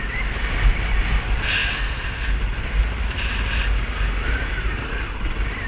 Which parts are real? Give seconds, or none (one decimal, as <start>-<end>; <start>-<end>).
0.0-5.7